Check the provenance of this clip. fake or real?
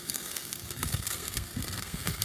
fake